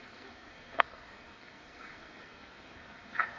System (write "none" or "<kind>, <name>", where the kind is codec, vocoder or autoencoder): codec, SNAC